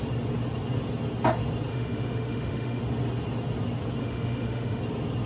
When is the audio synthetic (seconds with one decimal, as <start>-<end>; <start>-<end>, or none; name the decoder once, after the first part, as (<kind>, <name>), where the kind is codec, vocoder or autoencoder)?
1.7-2.8 (autoencoder, DAC-VAE); 4.0-4.8